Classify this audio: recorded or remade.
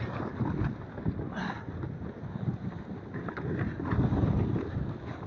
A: recorded